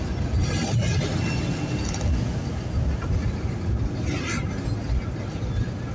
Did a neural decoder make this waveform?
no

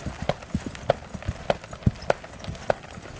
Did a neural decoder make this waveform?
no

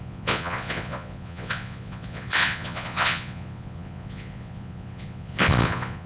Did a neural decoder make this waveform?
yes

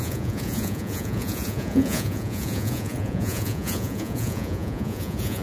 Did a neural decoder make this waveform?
yes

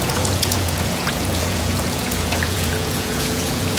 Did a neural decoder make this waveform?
yes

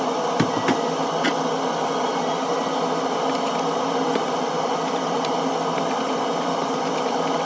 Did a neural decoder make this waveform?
no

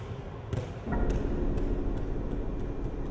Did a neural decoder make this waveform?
no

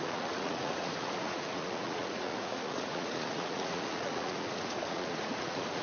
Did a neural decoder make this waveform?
yes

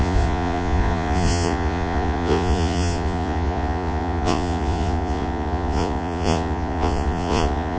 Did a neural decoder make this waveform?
yes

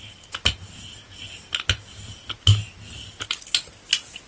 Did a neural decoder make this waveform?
no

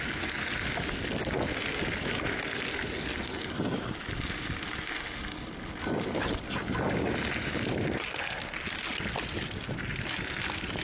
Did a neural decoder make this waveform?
no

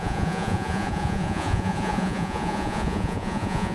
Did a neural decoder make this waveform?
yes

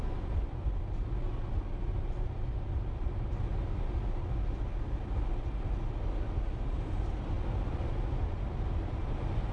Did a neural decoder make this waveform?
no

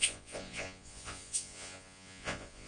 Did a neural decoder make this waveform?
yes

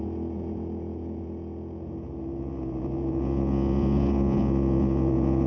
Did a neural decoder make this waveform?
yes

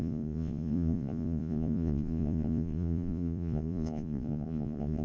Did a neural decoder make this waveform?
yes